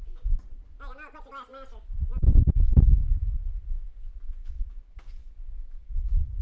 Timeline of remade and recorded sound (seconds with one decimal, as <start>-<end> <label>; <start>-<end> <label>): 0.0-4.4 recorded; 4.4-5.3 remade; 5.3-5.8 recorded; 5.8-6.4 remade